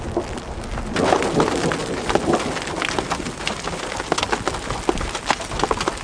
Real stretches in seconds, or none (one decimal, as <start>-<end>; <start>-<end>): 0.0-1.8; 4.2-6.0